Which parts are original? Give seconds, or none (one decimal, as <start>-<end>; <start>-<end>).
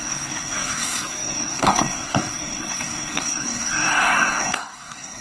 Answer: none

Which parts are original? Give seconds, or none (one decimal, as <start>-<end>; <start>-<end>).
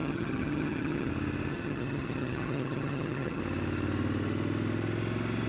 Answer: 1.1-1.5; 3.4-5.5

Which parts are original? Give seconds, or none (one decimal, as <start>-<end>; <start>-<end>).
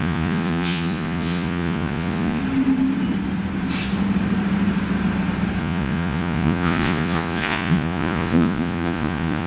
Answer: 2.4-5.6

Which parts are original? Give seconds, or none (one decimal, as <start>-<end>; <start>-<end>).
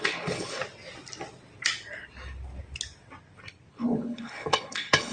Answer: 0.6-3.7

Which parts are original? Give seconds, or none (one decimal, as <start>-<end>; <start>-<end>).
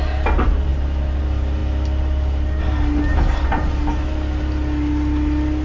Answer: 0.0-5.6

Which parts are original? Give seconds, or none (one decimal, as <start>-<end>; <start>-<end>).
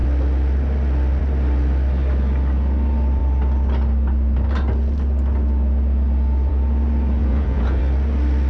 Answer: 0.0-7.2; 7.8-8.5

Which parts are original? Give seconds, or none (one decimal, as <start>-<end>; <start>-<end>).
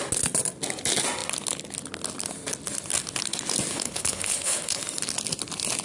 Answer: 0.0-3.7; 4.8-5.8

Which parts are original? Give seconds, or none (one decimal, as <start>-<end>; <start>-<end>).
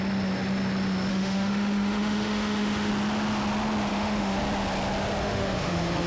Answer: 0.0-1.1; 2.9-3.9; 4.4-5.2